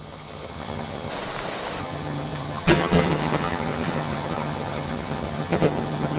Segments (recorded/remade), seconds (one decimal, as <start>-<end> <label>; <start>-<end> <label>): 0.0-1.1 remade; 1.1-1.8 recorded; 1.8-6.2 remade